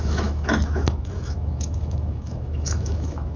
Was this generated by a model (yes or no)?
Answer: yes